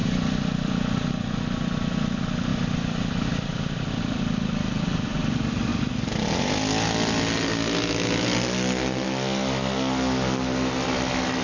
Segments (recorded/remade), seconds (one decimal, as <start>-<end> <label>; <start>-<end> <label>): 0.0-1.1 remade; 1.1-2.5 recorded; 2.5-5.2 remade; 5.2-11.4 recorded